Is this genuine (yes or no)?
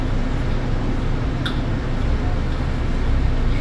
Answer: yes